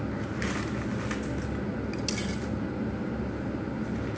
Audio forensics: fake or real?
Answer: real